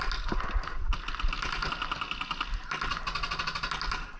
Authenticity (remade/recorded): recorded